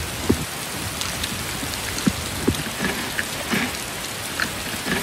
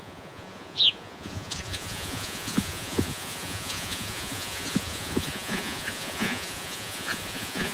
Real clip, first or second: first